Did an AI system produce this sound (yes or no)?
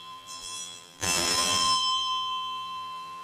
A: yes